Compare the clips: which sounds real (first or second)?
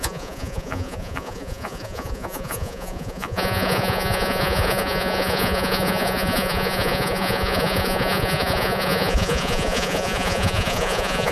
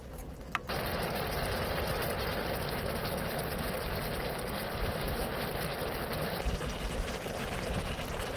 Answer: second